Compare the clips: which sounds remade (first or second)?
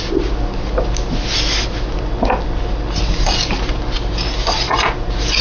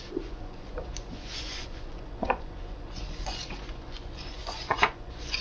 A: second